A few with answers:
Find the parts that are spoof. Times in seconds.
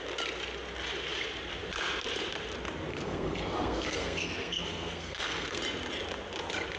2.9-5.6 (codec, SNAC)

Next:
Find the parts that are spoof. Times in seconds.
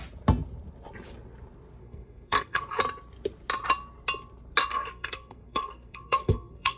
1.8-2.8 (codec, SNAC); 4.7-6.8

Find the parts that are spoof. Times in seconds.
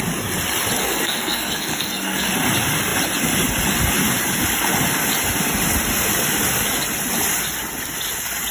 0.8-2.3 (codec, SNAC)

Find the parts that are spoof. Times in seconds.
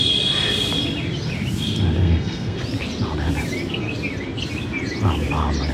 2.0-2.6 (codec, SNAC)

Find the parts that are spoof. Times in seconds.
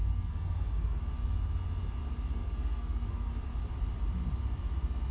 0.0-1.0 (codec, SNAC); 2.3-3.3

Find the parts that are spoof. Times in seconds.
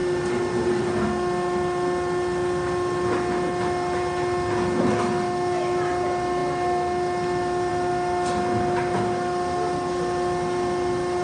none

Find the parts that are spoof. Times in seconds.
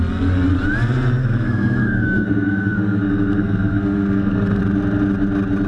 1.2-4.6 (codec, SNAC)